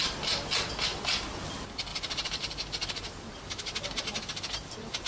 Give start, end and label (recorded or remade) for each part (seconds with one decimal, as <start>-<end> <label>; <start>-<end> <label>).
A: 0.0-0.5 remade; 0.5-1.9 recorded; 1.9-5.1 remade